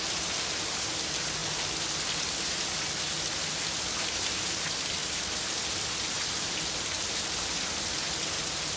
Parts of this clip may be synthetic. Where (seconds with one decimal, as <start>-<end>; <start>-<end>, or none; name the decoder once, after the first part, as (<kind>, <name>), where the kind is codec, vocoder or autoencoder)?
0.0-1.4 (vocoder, BigVGAN v2); 4.4-5.0; 7.1-8.8